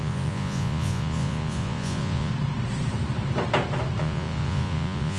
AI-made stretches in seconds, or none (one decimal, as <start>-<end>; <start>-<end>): 0.0-2.3; 4.0-5.2